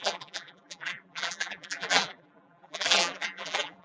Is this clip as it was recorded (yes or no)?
no